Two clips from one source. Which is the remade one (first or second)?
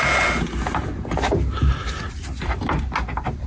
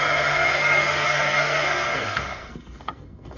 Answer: second